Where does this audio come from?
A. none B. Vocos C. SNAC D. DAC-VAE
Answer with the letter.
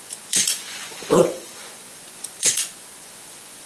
B